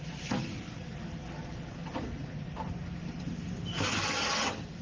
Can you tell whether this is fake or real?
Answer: real